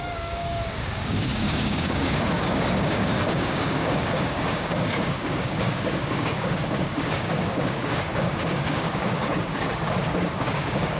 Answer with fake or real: fake